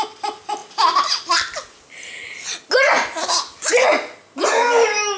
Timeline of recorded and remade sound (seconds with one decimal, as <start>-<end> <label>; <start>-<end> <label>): 0.0-5.2 recorded